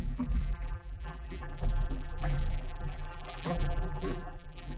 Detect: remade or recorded remade